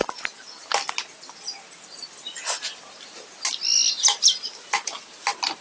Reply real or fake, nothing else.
real